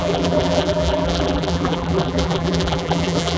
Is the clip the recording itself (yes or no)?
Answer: no